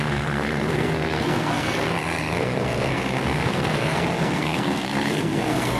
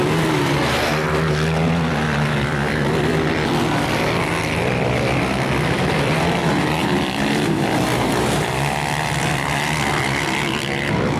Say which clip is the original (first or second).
second